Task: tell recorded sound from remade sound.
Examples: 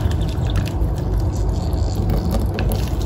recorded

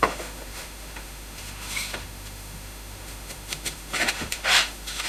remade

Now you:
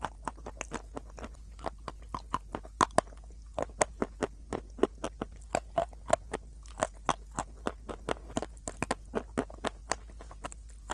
recorded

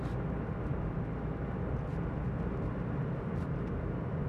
recorded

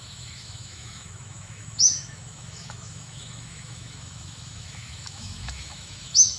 remade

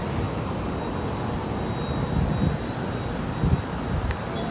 recorded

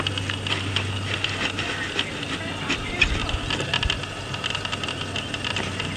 recorded